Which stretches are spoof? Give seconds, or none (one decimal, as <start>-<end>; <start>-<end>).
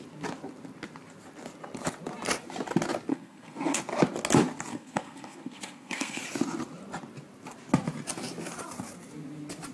3.1-3.8; 4.7-6.2